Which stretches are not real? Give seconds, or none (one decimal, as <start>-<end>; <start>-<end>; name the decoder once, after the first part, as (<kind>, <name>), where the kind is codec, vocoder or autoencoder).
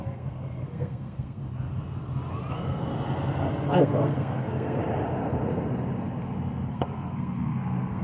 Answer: 0.0-1.4 (codec, SNAC); 2.5-2.9; 3.7-4.8; 6.7-8.0